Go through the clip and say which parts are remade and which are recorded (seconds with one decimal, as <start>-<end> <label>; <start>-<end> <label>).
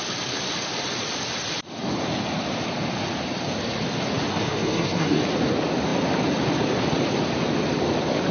0.0-4.3 recorded; 4.3-5.2 remade; 5.2-8.3 recorded